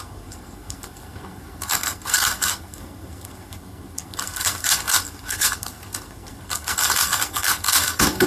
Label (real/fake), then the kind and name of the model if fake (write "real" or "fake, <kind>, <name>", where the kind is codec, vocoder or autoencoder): fake, codec, SNAC